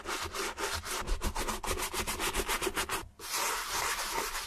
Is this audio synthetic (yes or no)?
no